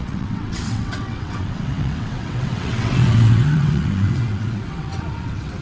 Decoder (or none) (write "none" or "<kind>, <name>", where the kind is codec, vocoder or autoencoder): vocoder, WaveNeXt